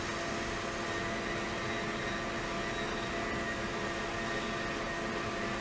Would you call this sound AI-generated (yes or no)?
no